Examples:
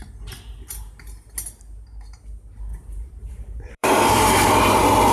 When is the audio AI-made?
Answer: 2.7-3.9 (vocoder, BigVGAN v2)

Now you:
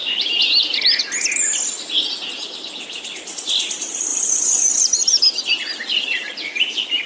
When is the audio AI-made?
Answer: 0.0-1.0 (vocoder, BigVGAN v2); 4.1-5.4